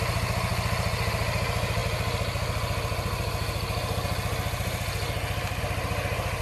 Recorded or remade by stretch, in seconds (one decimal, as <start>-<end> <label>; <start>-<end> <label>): 0.0-6.4 recorded

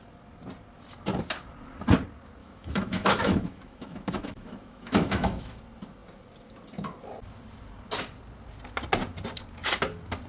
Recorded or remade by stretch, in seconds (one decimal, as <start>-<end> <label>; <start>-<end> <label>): 0.0-2.4 recorded; 2.4-5.6 remade; 5.6-10.3 recorded